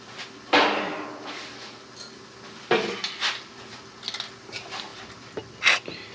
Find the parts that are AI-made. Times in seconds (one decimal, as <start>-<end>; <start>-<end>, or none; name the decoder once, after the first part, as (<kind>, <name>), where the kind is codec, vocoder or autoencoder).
none